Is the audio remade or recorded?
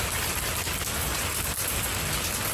recorded